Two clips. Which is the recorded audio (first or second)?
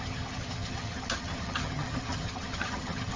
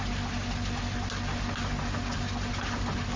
second